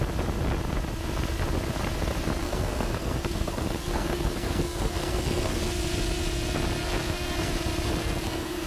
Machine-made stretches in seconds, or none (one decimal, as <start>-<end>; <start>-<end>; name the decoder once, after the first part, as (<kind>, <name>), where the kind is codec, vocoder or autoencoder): 2.4-5.6 (codec, SNAC); 6.8-7.5; 8.0-8.7